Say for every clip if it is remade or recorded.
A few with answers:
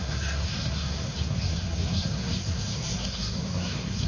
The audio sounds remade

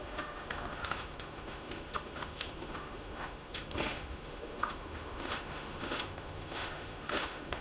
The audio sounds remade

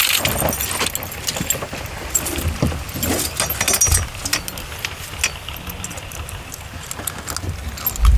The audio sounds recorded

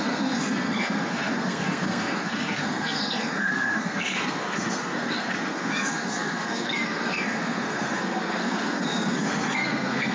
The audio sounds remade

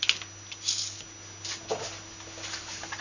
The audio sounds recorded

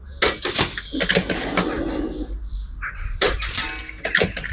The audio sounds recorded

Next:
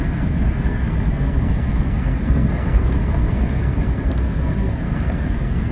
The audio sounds remade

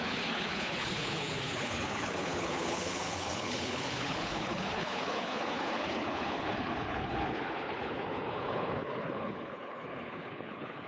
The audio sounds remade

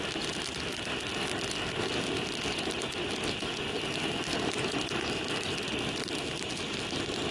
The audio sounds recorded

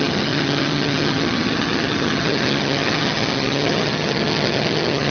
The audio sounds remade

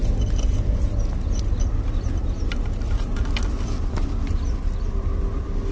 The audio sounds recorded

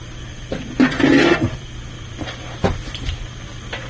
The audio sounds recorded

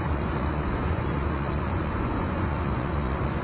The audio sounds remade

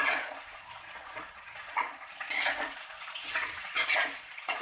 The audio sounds remade